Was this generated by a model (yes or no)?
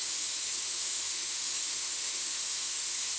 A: yes